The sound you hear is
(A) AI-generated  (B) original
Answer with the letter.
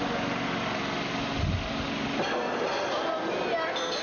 B